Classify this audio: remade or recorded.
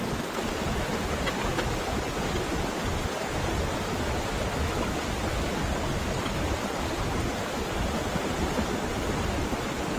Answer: recorded